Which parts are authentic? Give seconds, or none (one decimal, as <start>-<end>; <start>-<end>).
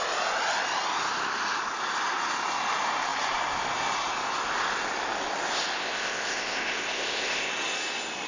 0.0-5.8; 7.5-8.3